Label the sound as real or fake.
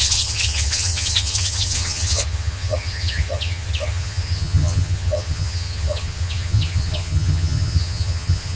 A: fake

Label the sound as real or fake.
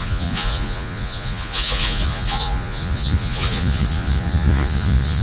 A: fake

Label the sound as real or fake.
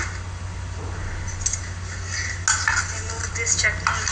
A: real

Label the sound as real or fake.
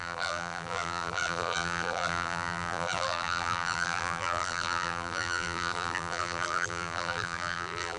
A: fake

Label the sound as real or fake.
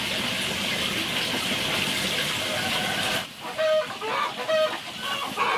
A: real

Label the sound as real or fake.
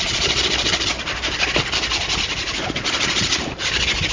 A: real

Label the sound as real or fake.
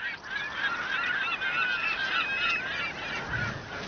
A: real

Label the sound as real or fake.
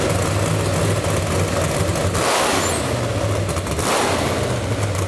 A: real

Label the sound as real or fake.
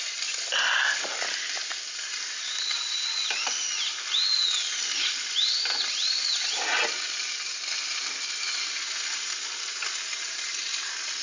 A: real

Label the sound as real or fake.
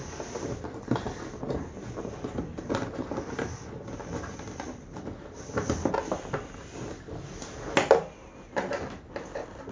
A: real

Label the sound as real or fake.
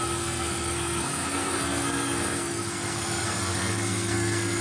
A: fake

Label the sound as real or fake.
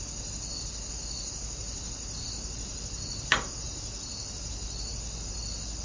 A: real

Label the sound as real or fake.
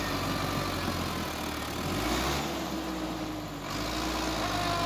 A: real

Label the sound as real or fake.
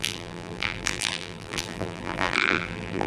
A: fake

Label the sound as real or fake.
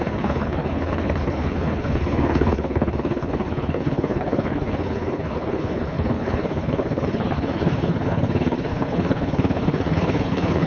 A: fake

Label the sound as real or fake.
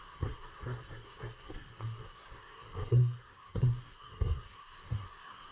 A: fake